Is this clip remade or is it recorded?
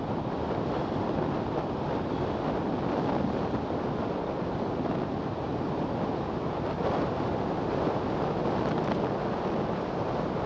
recorded